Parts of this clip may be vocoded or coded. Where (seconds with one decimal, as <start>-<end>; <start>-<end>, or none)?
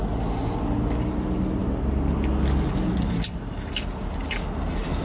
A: none